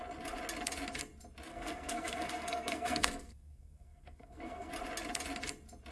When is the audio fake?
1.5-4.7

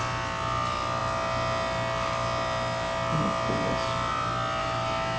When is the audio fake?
4.6-5.2

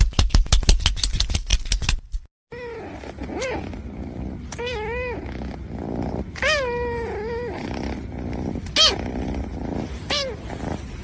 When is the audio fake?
none

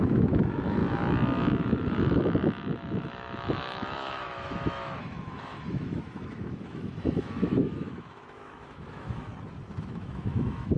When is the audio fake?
0.0-0.8; 1.6-9.3; 9.8-10.8